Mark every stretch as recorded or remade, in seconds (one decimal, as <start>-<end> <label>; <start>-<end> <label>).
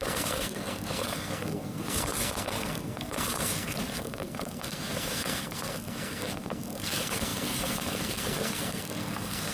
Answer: 0.0-9.5 remade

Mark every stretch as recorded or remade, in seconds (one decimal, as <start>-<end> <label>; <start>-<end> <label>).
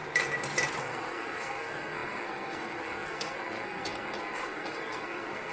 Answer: 0.0-0.8 recorded; 0.8-5.5 remade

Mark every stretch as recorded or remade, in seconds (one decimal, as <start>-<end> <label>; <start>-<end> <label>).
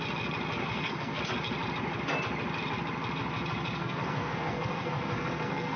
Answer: 0.0-0.6 recorded; 0.6-1.2 remade; 1.2-3.8 recorded; 3.8-5.8 remade